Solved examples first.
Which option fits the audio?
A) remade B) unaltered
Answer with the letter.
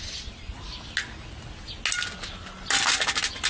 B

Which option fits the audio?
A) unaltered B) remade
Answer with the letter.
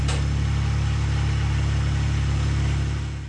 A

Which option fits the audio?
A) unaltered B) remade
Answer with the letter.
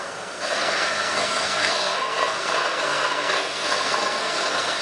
B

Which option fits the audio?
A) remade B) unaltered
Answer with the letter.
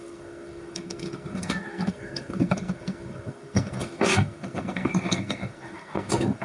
A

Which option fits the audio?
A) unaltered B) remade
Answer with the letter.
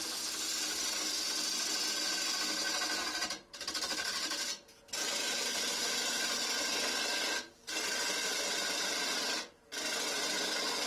A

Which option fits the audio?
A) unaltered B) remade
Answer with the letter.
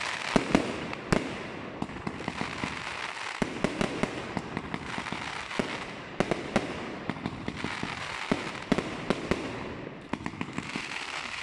A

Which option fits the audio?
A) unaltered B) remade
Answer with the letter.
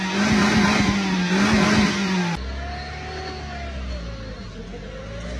A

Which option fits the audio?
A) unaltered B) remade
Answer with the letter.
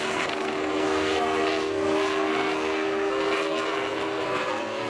B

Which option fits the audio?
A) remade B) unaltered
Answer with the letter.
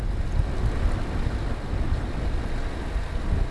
B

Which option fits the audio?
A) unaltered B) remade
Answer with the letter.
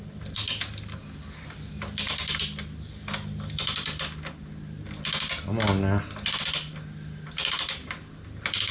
A